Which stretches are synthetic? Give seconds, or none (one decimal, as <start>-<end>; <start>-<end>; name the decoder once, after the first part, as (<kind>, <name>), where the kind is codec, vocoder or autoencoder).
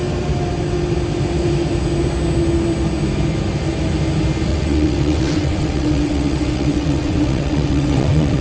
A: 4.5-8.4 (vocoder, WaveNeXt)